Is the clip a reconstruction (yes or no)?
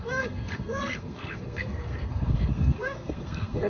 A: yes